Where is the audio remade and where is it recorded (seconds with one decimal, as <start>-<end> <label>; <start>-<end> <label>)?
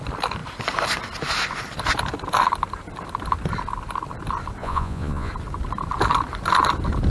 0.0-4.6 recorded; 4.6-5.3 remade; 5.3-7.1 recorded